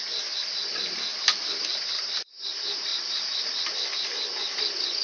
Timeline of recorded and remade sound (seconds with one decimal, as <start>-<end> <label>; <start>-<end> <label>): 0.0-1.1 recorded; 1.1-2.2 remade; 2.2-2.9 recorded; 2.9-3.9 remade; 3.9-5.0 recorded